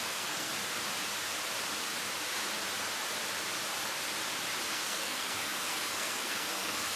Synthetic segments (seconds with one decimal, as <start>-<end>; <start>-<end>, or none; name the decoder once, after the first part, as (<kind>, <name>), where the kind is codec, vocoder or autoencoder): 0.0-0.5 (codec, SNAC); 4.7-7.0